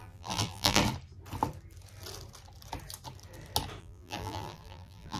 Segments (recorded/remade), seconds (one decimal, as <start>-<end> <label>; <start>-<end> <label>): 0.0-0.8 remade; 0.8-3.8 recorded; 3.8-5.2 remade